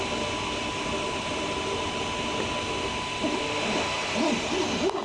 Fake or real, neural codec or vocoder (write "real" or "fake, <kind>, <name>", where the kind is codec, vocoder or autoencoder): real